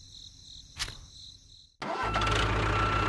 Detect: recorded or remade recorded